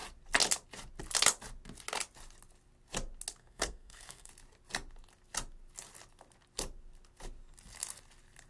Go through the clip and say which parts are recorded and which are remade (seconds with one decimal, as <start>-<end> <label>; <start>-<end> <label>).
0.0-3.4 recorded; 3.4-4.3 remade; 4.3-8.5 recorded